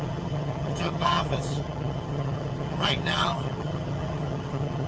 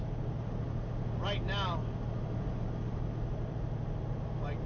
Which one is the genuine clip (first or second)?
second